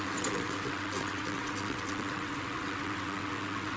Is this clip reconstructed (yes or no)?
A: yes